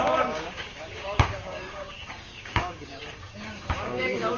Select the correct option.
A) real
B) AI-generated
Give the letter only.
B